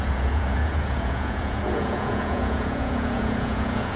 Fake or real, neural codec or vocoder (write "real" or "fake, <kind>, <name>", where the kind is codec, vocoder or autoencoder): fake, vocoder, Vocos